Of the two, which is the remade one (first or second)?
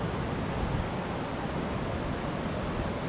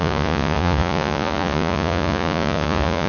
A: second